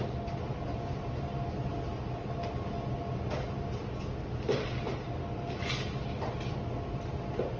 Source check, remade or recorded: recorded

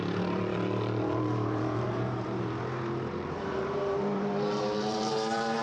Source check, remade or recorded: remade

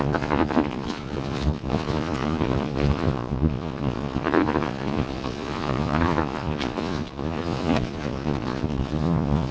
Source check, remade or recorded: remade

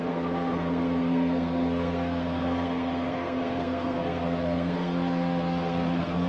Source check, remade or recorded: remade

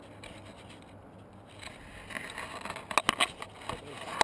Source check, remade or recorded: recorded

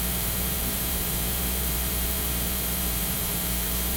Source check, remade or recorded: remade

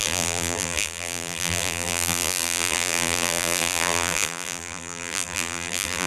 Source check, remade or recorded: remade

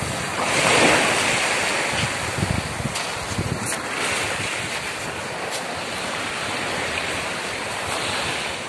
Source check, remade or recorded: recorded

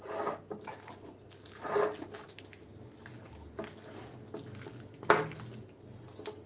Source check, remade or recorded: recorded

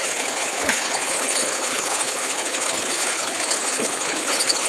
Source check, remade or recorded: remade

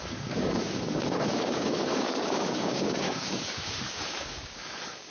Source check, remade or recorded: remade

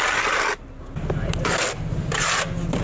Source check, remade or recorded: recorded